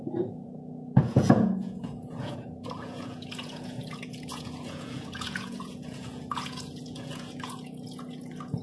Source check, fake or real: fake